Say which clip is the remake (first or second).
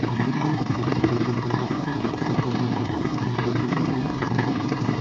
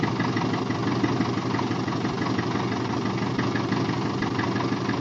first